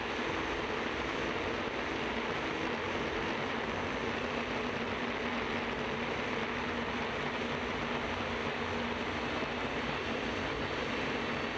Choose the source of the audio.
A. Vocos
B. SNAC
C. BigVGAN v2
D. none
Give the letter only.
D